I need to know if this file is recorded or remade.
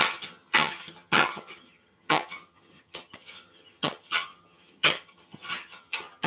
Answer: remade